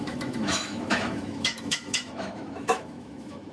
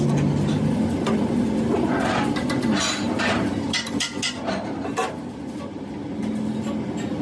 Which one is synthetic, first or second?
first